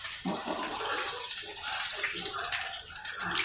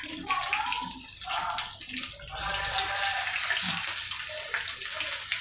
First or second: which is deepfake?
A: first